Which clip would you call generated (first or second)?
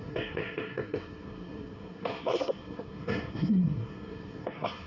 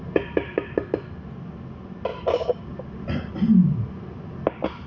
first